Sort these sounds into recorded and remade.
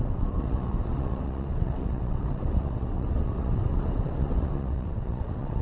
remade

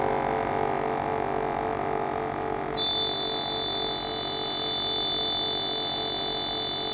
recorded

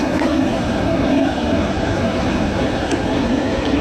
remade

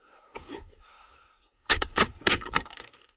remade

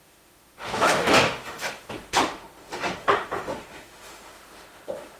remade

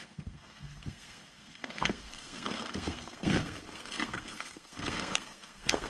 remade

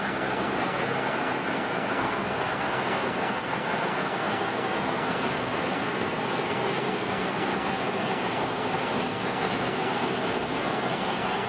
remade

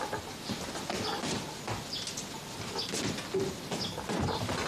recorded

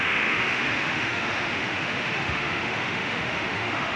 remade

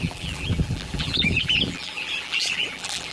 remade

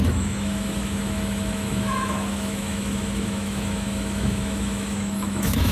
remade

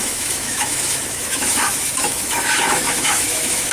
remade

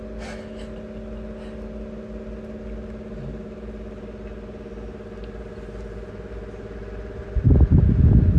recorded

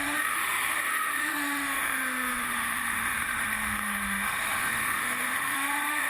remade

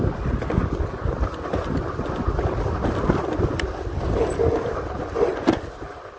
recorded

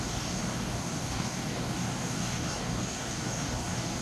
remade